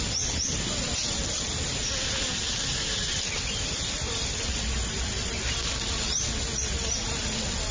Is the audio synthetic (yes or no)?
no